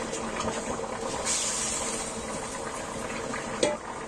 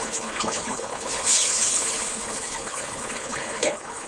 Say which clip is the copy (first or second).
second